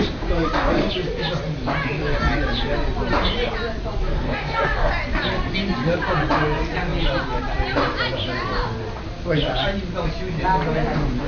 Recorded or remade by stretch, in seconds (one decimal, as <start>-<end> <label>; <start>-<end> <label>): 0.0-4.1 recorded; 4.1-4.9 remade; 4.9-11.3 recorded